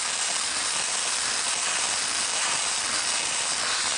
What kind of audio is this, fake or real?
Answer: real